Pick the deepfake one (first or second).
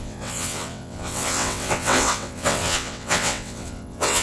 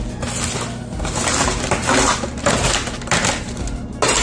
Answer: first